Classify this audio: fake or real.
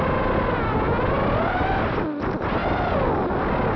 real